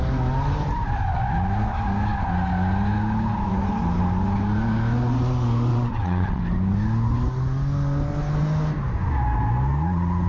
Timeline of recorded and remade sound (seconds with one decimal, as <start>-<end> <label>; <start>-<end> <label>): 0.0-5.7 recorded; 5.7-6.4 remade; 6.4-10.3 recorded